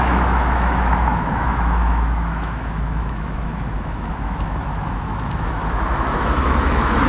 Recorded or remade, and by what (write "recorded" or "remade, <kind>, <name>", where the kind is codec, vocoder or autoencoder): remade, autoencoder, DAC-VAE